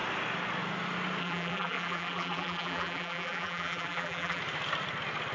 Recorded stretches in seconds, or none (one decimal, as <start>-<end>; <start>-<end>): 0.0-1.2; 4.4-5.3